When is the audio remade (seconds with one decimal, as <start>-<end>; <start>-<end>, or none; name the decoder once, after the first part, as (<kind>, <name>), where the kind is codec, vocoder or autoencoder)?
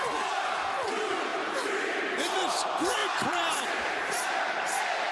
1.3-2.0 (vocoder, BigVGAN v2); 3.0-4.4